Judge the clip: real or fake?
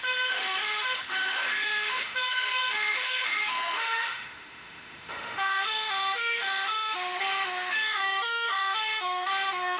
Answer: fake